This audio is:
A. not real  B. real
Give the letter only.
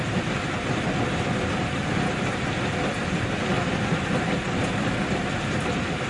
B